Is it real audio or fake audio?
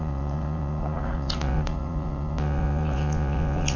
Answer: fake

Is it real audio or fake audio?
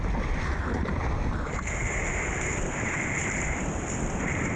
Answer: real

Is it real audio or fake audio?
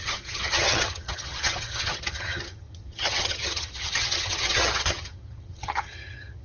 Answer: fake